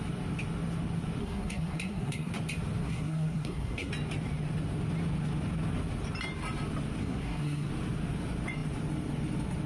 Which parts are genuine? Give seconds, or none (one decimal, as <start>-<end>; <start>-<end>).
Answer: 0.0-1.2; 2.3-2.8; 3.9-7.0; 7.7-9.7